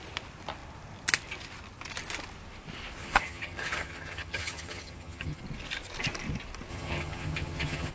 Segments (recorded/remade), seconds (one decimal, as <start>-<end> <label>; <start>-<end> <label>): 0.0-3.0 recorded; 3.0-5.4 remade; 5.4-6.7 recorded; 6.7-7.9 remade

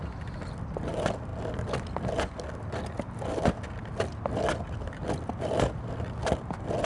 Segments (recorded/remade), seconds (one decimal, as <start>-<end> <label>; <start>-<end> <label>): 0.0-6.8 recorded

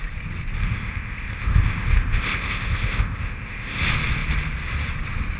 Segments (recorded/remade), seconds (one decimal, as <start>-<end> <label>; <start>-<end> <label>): 0.0-0.6 recorded; 0.6-3.8 remade; 3.8-5.4 recorded

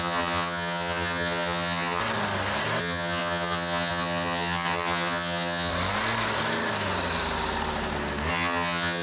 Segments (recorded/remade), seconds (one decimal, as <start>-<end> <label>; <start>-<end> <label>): 0.0-2.0 remade; 2.0-2.8 recorded; 2.8-5.7 remade; 5.7-8.3 recorded; 8.3-9.0 remade

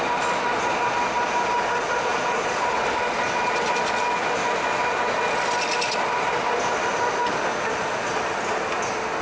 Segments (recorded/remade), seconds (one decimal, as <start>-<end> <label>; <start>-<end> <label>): 0.0-9.2 recorded

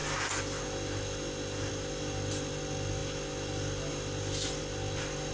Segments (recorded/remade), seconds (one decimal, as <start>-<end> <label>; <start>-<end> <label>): 0.0-5.3 recorded

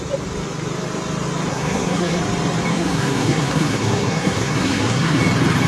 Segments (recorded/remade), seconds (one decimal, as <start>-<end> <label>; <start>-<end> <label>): 0.0-1.5 recorded; 1.5-2.2 remade; 2.2-2.7 recorded; 2.7-5.2 remade; 5.2-5.7 recorded

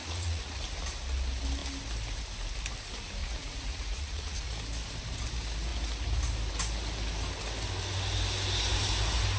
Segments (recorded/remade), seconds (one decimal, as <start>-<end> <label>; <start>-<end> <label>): 0.0-0.6 remade; 0.6-3.2 recorded; 3.2-4.5 remade; 4.5-9.4 recorded